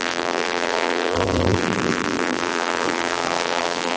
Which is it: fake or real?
fake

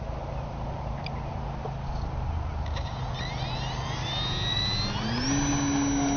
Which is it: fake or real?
real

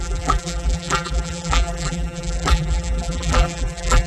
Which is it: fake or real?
fake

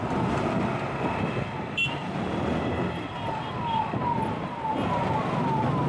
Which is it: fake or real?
real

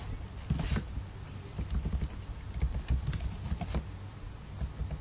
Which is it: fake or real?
real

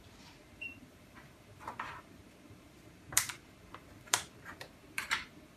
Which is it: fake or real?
fake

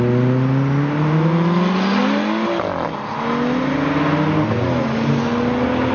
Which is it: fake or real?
real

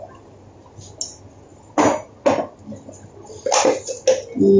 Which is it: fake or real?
real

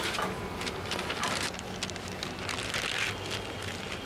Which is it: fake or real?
real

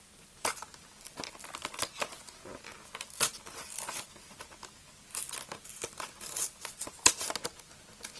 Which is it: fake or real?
real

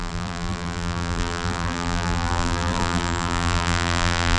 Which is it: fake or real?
fake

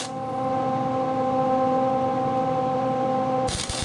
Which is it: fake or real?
fake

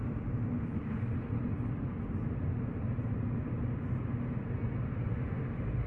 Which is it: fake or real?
real